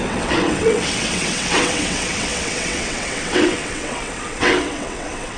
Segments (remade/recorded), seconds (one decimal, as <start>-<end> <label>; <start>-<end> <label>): 0.0-5.4 remade